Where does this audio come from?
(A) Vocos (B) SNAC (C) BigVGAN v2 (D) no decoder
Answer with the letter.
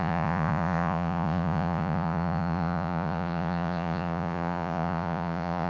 A